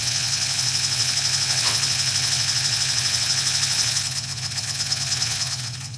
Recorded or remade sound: remade